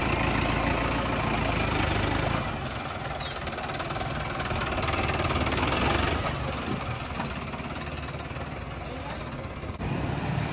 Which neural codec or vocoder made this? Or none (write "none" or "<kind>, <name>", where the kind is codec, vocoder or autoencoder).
none